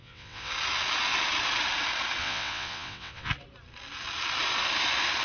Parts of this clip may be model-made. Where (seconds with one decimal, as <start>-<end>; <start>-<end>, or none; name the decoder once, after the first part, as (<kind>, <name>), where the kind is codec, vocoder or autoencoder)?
0.0-0.5 (vocoder, WaveNeXt); 2.2-3.3